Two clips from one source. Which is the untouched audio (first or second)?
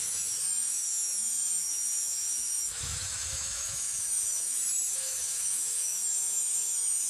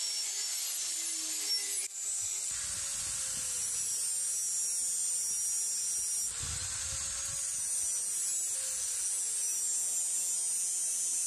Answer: second